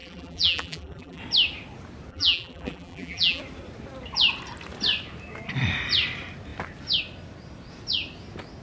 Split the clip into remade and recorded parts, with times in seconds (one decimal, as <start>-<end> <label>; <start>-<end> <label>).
0.0-1.2 remade; 1.2-2.1 recorded; 2.1-3.4 remade; 3.4-8.6 recorded